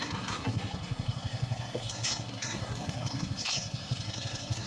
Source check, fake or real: fake